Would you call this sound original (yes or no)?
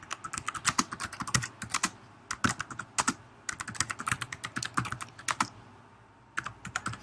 yes